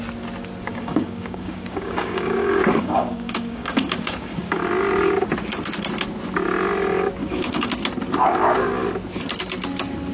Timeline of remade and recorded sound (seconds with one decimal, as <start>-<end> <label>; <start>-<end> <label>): 0.0-0.7 recorded; 0.7-4.6 remade; 4.6-7.2 recorded; 7.2-7.7 remade; 7.7-10.1 recorded